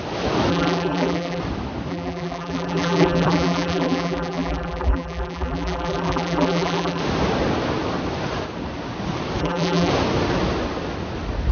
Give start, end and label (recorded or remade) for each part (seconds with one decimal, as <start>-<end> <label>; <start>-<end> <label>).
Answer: 0.0-0.5 recorded; 0.5-1.4 remade; 1.4-1.9 recorded; 1.9-7.0 remade; 7.0-9.4 recorded; 9.4-9.9 remade; 9.9-11.5 recorded